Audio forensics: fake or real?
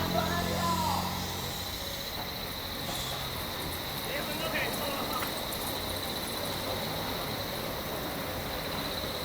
real